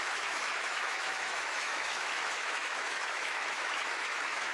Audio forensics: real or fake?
fake